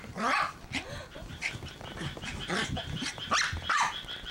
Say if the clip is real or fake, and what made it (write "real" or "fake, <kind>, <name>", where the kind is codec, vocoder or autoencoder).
fake, vocoder, BigVGAN v2